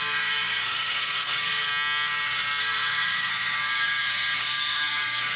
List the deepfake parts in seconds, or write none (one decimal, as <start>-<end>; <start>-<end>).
0.0-1.7; 2.6-5.4